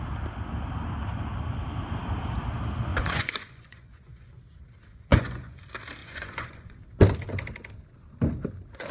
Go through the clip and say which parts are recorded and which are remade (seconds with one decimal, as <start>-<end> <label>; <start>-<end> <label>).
0.0-2.9 recorded; 2.9-4.3 remade; 4.3-4.9 recorded; 4.9-5.6 remade; 5.6-6.0 recorded; 6.0-6.8 remade; 6.8-8.9 recorded